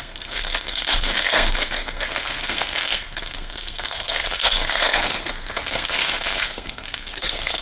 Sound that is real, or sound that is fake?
fake